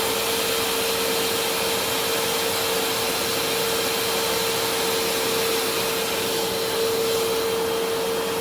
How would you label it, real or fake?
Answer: real